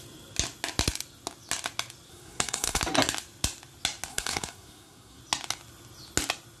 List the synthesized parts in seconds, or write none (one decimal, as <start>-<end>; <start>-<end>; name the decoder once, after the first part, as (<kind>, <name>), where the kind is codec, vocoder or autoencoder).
2.1-2.8 (codec, SNAC); 4.1-5.2